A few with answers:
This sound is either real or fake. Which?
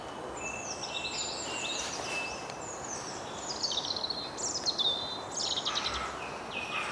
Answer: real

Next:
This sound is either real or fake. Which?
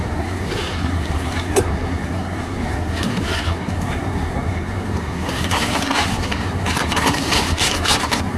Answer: fake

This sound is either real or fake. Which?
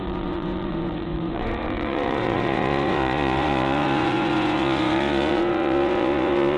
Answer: fake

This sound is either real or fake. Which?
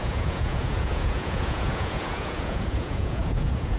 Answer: fake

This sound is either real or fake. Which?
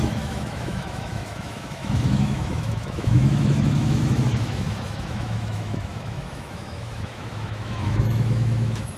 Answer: fake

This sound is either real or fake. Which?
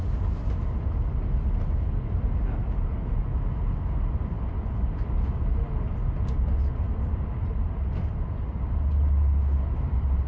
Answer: real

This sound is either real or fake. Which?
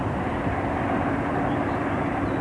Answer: fake